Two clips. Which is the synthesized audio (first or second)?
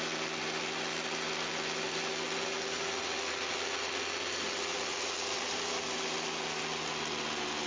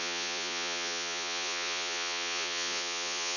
second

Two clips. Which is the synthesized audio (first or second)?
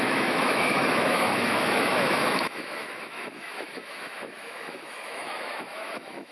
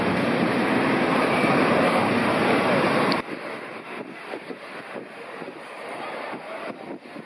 first